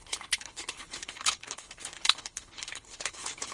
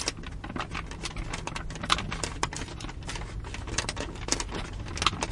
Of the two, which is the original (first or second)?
second